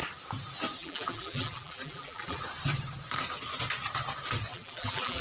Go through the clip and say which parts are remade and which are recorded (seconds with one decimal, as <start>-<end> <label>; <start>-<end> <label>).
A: 0.0-0.8 recorded; 0.8-2.4 remade; 2.4-4.5 recorded; 4.5-5.2 remade